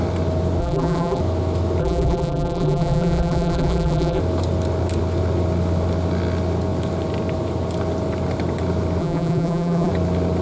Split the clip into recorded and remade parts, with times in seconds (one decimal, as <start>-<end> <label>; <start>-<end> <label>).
0.0-0.6 recorded; 0.6-1.2 remade; 1.2-1.8 recorded; 1.8-4.2 remade; 4.2-9.0 recorded; 9.0-9.9 remade; 9.9-10.4 recorded